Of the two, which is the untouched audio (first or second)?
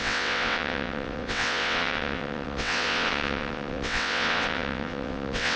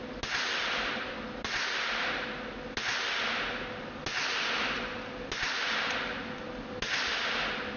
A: second